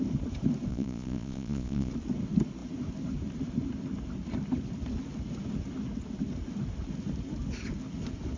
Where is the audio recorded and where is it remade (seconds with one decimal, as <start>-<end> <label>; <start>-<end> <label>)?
0.0-0.7 recorded; 0.7-1.9 remade; 1.9-8.4 recorded